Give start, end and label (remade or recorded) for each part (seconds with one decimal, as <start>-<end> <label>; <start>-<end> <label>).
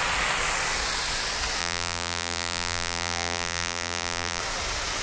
0.0-1.6 recorded; 1.6-4.4 remade; 4.4-5.0 recorded